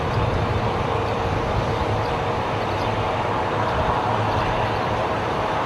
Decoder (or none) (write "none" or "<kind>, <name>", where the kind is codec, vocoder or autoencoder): vocoder, BigVGAN v2